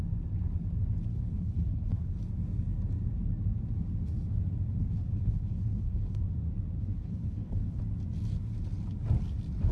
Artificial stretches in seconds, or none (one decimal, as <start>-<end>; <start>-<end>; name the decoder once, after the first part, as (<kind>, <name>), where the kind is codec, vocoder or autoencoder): 1.1-2.2 (codec, HILCodec); 4.8-6.2; 6.8-7.8